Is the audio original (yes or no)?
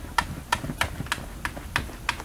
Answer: yes